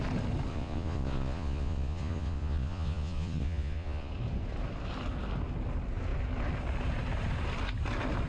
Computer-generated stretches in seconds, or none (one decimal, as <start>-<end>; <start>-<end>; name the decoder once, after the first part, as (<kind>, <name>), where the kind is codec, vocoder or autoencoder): 0.5-4.1 (vocoder, Vocos)